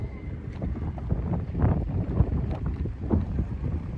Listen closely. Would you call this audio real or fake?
fake